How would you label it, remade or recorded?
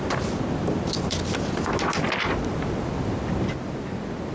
recorded